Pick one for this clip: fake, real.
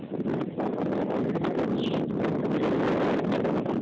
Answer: real